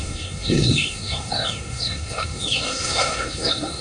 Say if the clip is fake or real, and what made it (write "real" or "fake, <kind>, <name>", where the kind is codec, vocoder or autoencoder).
fake, codec, SNAC